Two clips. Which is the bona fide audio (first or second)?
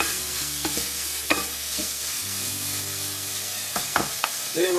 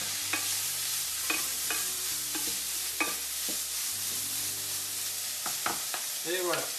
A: second